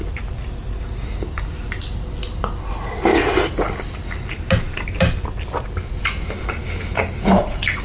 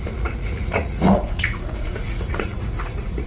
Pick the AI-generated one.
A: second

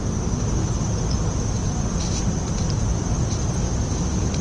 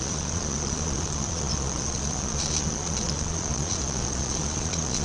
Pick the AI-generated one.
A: second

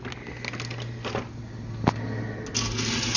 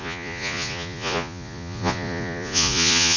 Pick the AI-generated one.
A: second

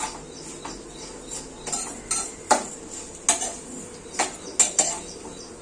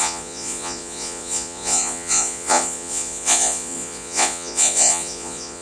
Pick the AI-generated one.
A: second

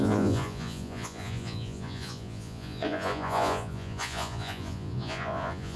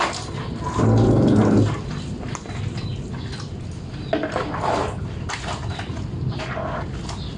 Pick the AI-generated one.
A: first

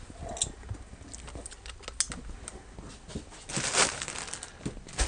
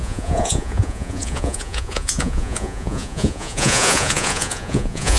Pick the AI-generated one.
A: second